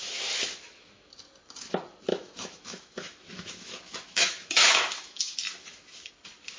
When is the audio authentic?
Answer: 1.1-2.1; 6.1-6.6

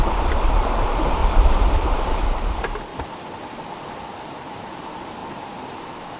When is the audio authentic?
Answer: 1.2-2.1; 2.9-4.3; 5.2-6.2

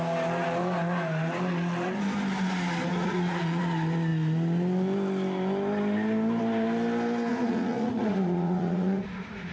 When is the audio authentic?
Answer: 0.0-2.9; 3.6-7.3

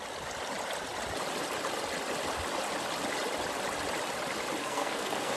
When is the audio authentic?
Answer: 0.0-4.6